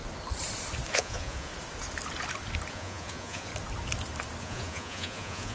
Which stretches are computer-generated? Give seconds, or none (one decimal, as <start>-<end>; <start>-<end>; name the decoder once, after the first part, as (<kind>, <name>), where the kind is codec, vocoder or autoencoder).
0.9-1.5 (vocoder, Vocos); 2.7-3.5; 4.4-5.5